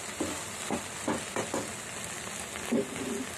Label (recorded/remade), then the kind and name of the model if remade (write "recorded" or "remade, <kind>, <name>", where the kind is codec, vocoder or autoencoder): recorded